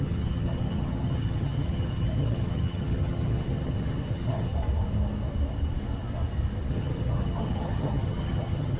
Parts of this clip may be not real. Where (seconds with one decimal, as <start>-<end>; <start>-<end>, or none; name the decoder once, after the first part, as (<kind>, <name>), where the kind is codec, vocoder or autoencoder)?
0.0-4.5 (vocoder, HiFi-GAN); 6.7-8.8